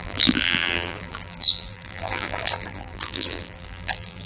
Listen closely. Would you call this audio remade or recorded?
remade